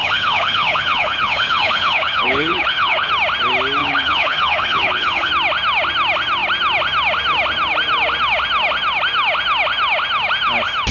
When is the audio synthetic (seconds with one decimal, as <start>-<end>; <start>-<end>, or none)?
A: 0.0-3.1; 3.8-5.3